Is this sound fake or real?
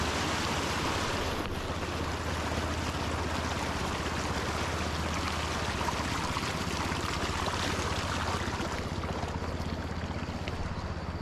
real